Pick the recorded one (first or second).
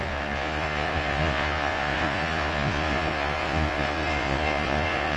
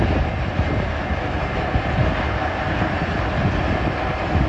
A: second